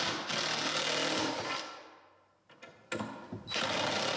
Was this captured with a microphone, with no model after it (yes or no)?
yes